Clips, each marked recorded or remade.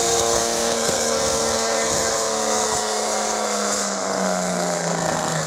remade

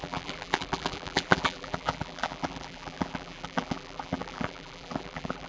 remade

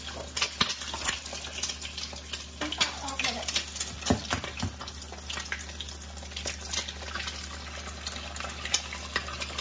recorded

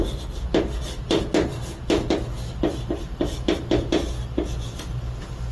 recorded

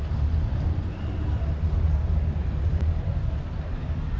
recorded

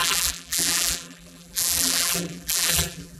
remade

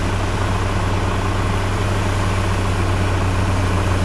recorded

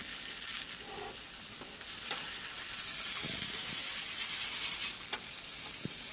recorded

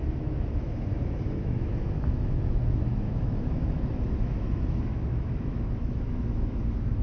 remade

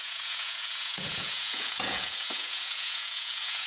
remade